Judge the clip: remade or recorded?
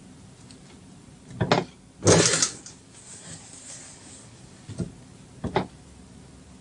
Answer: recorded